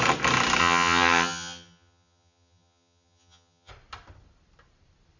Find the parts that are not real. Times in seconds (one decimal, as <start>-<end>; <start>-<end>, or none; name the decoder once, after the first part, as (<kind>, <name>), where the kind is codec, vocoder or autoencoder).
0.6-3.7 (vocoder, HiFi-GAN)